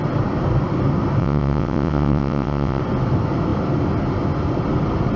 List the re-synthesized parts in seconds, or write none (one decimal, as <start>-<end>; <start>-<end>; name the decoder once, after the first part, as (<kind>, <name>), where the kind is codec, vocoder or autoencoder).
1.2-2.8 (vocoder, WaveNeXt)